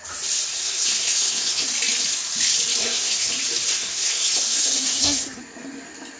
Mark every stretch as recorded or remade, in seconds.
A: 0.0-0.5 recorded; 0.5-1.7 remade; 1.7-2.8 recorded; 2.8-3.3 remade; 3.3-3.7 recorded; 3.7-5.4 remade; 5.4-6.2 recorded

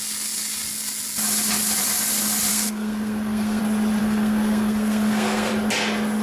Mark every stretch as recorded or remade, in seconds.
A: 0.0-2.5 recorded; 2.5-3.6 remade; 3.6-4.0 recorded; 4.0-5.5 remade; 5.5-6.2 recorded

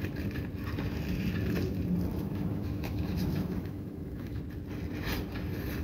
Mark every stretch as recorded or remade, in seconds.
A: 0.0-2.1 recorded; 2.1-4.4 remade; 4.4-5.8 recorded

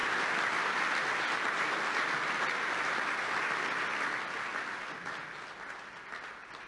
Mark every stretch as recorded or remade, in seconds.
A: 0.0-6.7 recorded

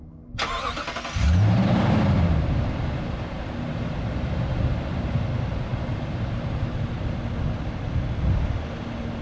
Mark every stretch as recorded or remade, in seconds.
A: 0.0-1.2 recorded; 1.2-3.9 remade; 3.9-5.7 recorded; 5.7-6.9 remade; 6.9-9.2 recorded

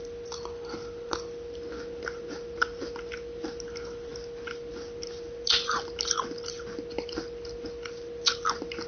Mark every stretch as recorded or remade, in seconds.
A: 0.0-8.9 recorded

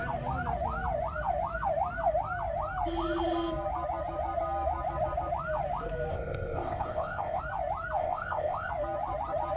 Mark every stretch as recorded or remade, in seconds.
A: 0.0-6.1 recorded; 6.1-7.4 remade; 7.4-8.0 recorded; 8.0-8.7 remade; 8.7-9.6 recorded

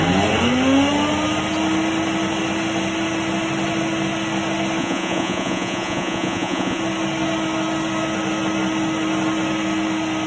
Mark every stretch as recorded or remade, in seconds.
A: 0.0-4.8 recorded; 4.8-6.8 remade; 6.8-10.3 recorded